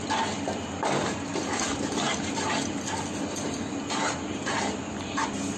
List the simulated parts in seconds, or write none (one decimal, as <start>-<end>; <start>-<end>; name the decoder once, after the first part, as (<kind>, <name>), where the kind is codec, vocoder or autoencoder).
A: none